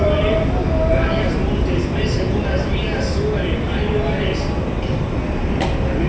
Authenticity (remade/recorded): recorded